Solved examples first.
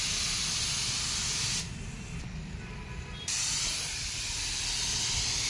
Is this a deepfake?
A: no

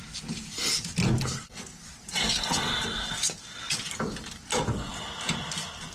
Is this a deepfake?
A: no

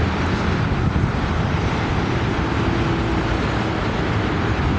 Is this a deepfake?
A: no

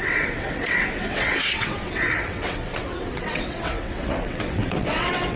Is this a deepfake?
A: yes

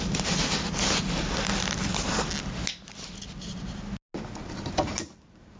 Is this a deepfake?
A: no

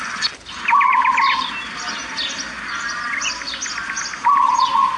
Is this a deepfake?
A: no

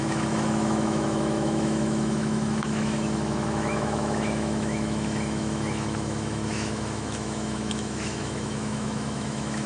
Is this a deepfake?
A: yes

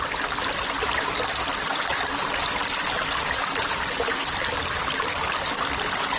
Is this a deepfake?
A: no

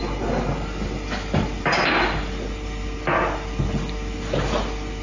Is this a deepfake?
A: no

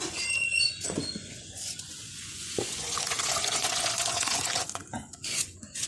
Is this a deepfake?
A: yes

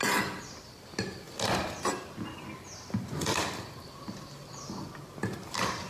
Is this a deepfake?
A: no